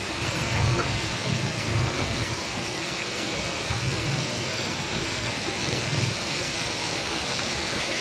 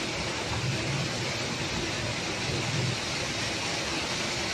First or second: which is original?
second